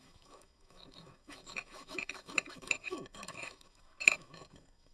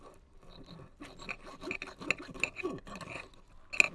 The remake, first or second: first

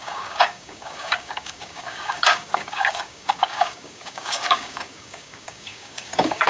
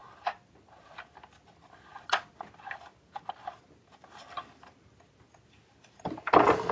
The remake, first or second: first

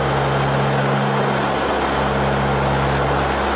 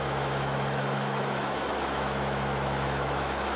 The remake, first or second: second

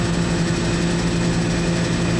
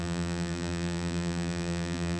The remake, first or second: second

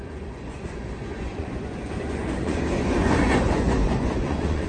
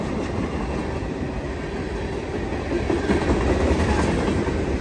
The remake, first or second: first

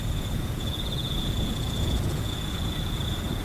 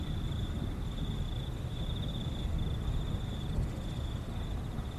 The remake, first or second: first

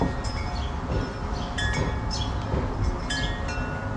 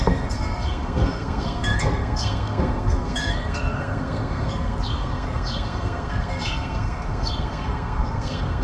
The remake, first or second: second